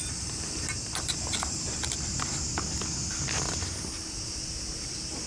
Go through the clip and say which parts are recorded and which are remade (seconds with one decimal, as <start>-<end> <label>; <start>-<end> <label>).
0.0-2.3 remade; 2.3-5.3 recorded